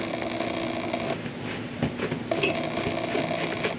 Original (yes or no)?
yes